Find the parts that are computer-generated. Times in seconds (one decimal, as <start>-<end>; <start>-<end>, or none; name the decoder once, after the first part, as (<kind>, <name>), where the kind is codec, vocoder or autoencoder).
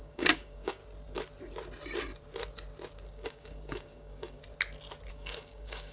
0.0-0.8 (codec, DAC); 3.1-4.4; 5.1-5.9